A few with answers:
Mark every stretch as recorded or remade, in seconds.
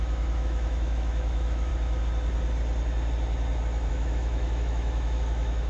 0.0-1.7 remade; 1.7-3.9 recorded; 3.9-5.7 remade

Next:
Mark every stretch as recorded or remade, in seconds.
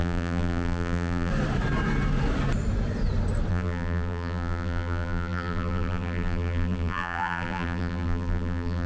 0.0-1.3 remade; 1.3-3.5 recorded; 3.5-8.9 remade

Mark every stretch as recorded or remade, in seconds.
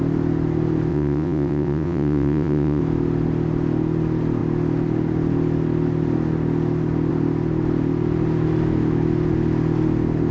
0.0-0.9 recorded; 0.9-2.8 remade; 2.8-10.3 recorded